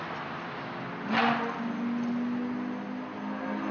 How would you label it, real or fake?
real